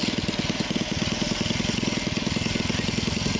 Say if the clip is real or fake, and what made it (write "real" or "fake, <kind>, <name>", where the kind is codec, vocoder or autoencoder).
real